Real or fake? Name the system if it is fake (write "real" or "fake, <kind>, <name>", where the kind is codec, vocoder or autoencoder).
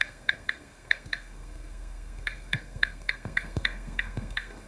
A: fake, codec, SNAC